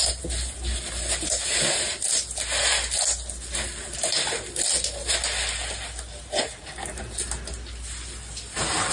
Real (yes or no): yes